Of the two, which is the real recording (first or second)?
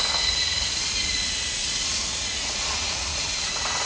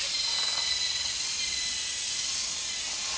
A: second